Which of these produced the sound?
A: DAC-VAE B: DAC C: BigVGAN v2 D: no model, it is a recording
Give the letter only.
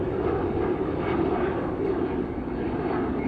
B